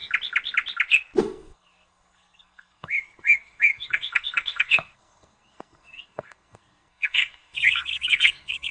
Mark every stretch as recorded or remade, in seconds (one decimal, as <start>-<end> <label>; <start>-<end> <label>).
0.0-1.2 recorded; 1.2-8.7 remade